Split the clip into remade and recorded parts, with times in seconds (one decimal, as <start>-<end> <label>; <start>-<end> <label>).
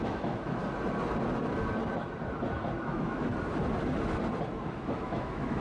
0.0-0.6 remade; 0.6-2.8 recorded; 2.8-3.3 remade; 3.3-4.6 recorded; 4.6-5.6 remade